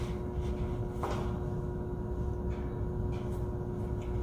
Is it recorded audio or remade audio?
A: recorded